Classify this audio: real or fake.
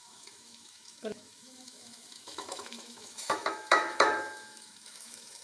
fake